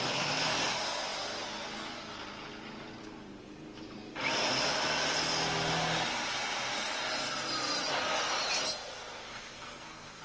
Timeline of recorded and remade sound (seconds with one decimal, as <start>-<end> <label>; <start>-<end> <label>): 0.0-9.3 recorded; 9.3-10.2 remade